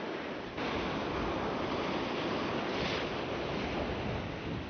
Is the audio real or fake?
real